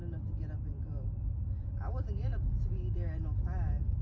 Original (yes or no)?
yes